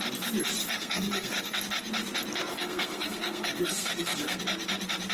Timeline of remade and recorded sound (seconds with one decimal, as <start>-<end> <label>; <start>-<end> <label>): 0.0-0.6 recorded; 0.6-1.6 remade; 1.6-2.5 recorded; 2.5-4.4 remade; 4.4-5.1 recorded